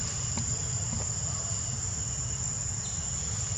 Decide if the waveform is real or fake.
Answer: real